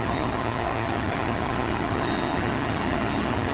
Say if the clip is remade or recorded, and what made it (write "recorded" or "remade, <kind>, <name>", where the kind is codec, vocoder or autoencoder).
remade, vocoder, HiFi-GAN